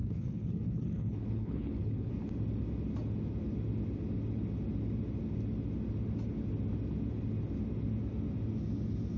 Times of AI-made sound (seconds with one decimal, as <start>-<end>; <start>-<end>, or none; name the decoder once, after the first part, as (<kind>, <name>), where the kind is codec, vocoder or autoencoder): 0.0-2.1 (codec, HILCodec)